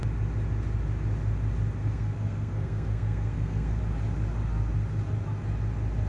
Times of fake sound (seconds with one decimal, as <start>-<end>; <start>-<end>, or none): 1.8-3.8